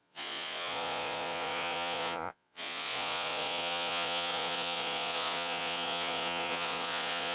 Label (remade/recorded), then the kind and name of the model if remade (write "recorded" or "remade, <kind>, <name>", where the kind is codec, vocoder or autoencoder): remade, vocoder, Vocos